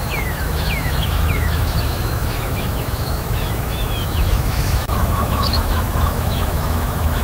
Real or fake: fake